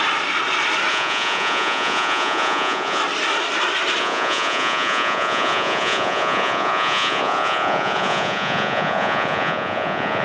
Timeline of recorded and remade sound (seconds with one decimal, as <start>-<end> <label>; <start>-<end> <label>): 0.0-0.9 recorded; 0.9-3.0 remade; 3.0-4.0 recorded; 4.0-10.2 remade